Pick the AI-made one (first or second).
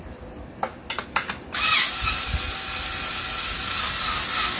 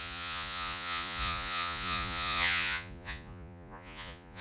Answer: second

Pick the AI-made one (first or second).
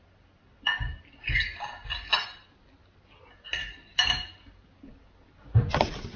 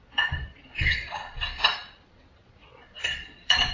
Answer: second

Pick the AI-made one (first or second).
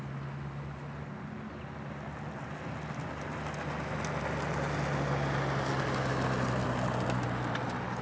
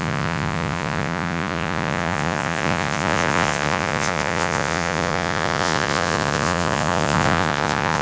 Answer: second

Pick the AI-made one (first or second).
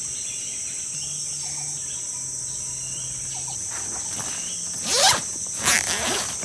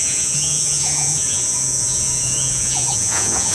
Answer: second